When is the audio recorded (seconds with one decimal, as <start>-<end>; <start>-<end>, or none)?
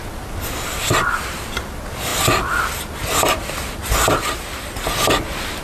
0.0-0.8; 2.1-4.8